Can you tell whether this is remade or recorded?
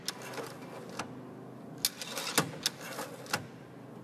recorded